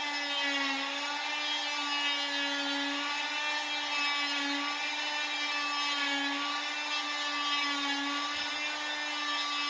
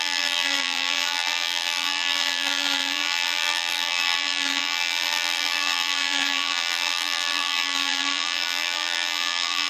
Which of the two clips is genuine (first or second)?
first